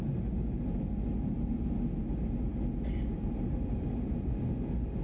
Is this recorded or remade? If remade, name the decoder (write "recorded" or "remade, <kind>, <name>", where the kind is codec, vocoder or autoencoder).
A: recorded